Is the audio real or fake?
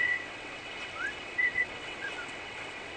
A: fake